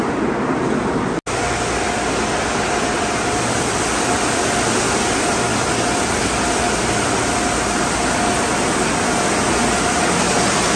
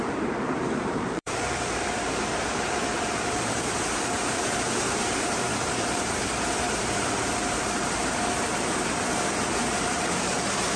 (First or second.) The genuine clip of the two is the first